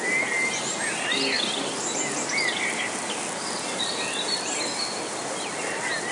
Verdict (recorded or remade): recorded